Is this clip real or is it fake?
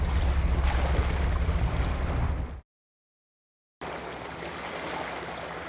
real